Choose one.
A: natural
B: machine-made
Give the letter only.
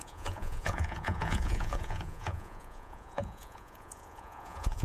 B